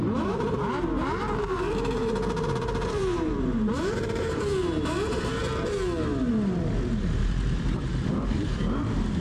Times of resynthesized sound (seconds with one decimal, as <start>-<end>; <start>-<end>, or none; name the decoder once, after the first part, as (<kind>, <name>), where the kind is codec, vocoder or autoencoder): 0.0-5.4 (vocoder, BigVGAN v2); 6.3-9.2